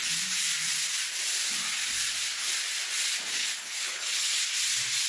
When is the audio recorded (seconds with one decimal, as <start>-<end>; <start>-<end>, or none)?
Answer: 0.0-3.4; 4.4-5.1